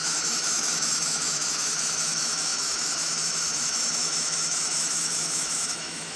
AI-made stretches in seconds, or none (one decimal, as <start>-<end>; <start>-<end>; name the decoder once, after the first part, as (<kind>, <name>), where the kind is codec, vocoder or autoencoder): 0.0-6.2 (autoencoder, DAC-VAE)